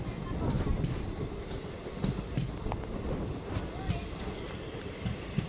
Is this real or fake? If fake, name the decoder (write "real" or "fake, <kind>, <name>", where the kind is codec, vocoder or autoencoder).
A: real